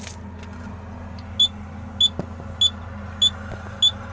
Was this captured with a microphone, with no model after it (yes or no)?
yes